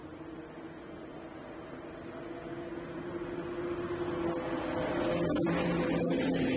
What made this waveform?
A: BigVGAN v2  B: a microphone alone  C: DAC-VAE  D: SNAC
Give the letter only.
B